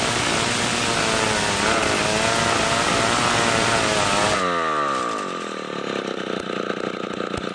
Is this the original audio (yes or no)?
yes